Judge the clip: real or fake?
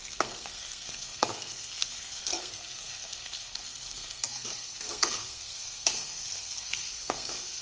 fake